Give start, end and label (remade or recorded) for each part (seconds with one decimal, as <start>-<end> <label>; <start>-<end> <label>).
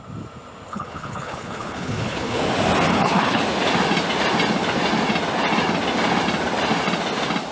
0.0-0.7 recorded; 0.7-2.4 remade; 2.4-2.9 recorded; 2.9-3.4 remade; 3.4-7.5 recorded